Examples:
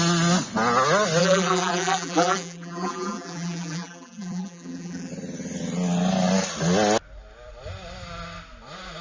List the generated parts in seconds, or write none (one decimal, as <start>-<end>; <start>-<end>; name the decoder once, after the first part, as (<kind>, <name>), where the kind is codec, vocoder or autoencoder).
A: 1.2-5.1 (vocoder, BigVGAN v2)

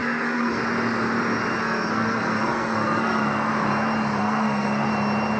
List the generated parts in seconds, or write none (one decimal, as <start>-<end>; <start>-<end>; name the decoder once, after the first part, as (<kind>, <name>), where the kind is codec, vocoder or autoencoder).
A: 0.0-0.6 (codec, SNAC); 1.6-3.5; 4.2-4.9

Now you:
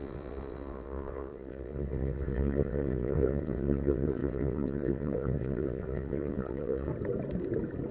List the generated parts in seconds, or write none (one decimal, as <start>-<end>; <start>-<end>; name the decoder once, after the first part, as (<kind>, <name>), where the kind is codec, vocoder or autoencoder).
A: 0.0-6.9 (vocoder, WaveNeXt)

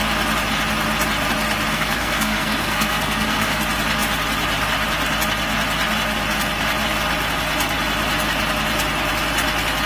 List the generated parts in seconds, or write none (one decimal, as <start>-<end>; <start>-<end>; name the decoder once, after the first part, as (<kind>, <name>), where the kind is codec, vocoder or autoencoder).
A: 1.7-3.6 (codec, SNAC)